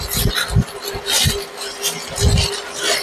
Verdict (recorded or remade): recorded